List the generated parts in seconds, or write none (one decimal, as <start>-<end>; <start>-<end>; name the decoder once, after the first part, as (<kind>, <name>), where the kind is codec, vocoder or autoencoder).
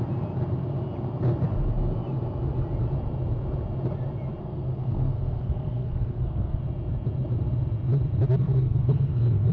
4.4-6.6 (codec, SNAC); 8.4-9.5